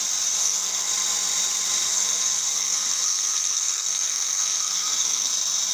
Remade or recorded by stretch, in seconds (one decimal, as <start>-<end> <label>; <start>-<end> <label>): 0.0-0.4 recorded; 0.4-0.9 remade; 0.9-1.9 recorded; 1.9-5.3 remade; 5.3-5.7 recorded